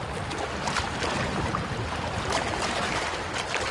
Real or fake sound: real